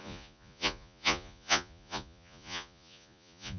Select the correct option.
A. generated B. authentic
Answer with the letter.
A